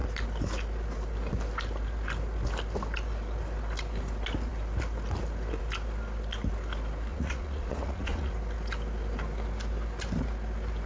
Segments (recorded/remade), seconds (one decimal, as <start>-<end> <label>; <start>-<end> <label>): 0.0-7.1 recorded; 7.1-8.3 remade; 8.3-10.9 recorded